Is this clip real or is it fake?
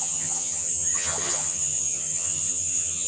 fake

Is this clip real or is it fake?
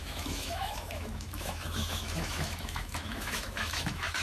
fake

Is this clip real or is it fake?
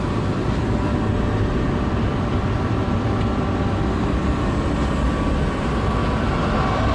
real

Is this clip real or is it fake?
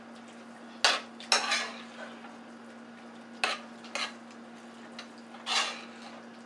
real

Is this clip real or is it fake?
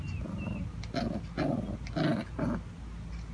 real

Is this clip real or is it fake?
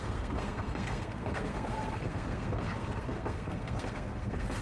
fake